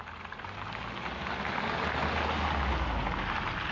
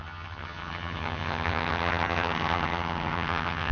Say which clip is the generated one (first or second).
second